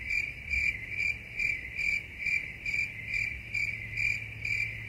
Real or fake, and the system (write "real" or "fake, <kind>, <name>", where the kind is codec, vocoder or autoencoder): real